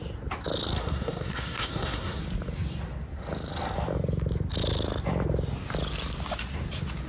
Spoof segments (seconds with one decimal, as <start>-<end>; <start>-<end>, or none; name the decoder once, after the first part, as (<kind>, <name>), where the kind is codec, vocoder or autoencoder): 0.8-2.2 (codec, SNAC)